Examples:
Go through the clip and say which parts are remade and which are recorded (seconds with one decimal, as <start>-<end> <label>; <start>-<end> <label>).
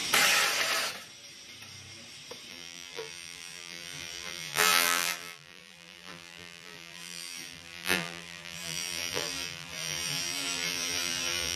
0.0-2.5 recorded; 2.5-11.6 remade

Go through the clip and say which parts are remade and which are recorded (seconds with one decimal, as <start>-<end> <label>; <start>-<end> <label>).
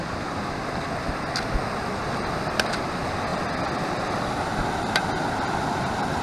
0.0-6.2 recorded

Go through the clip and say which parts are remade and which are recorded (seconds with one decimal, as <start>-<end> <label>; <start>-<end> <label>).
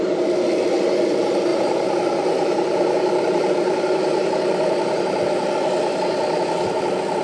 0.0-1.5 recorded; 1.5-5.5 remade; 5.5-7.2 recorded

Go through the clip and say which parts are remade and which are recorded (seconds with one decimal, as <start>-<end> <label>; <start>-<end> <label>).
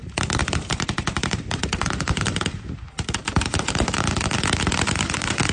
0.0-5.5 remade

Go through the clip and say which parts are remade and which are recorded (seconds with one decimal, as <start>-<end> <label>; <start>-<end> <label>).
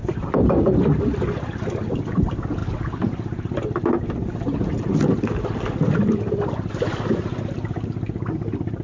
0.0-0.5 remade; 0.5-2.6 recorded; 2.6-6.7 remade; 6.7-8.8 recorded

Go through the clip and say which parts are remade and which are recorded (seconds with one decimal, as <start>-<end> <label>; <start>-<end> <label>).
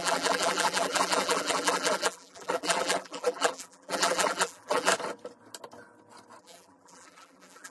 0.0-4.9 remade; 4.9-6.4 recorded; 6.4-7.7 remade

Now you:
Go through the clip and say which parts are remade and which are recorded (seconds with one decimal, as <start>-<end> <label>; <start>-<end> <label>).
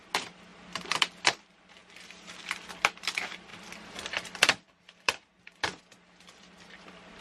0.0-0.5 recorded; 0.5-1.1 remade; 1.1-3.5 recorded; 3.5-5.8 remade; 5.8-7.2 recorded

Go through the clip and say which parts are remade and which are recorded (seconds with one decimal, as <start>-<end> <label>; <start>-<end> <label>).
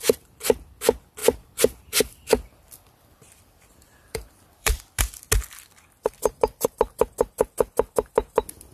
0.0-1.2 recorded; 1.2-5.0 remade; 5.0-8.7 recorded